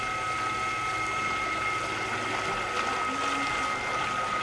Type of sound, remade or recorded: recorded